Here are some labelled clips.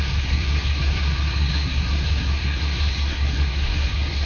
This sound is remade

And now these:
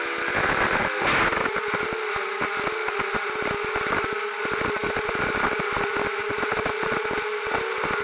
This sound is recorded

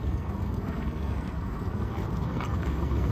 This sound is remade